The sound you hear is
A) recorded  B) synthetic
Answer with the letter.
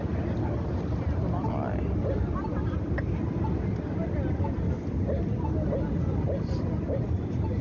A